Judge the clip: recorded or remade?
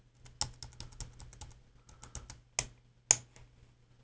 recorded